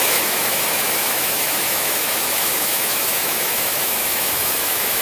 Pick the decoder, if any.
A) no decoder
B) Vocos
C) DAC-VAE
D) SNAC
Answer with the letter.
C